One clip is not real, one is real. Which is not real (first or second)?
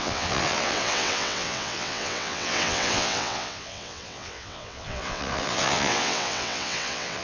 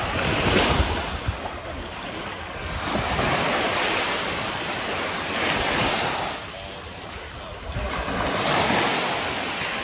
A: first